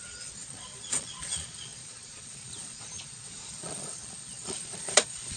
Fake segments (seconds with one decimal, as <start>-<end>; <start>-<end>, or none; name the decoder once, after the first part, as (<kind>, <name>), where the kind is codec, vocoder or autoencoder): 0.0-5.4 (vocoder, Vocos)